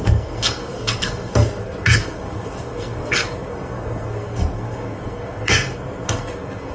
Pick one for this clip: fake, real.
fake